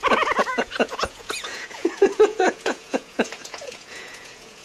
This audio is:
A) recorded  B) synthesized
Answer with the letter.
B